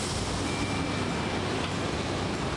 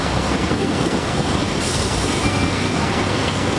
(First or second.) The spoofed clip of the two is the second